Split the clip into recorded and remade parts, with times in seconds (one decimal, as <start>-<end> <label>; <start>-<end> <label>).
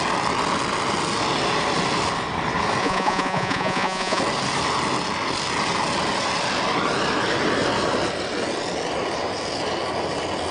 0.0-2.8 recorded; 2.8-4.2 remade; 4.2-10.5 recorded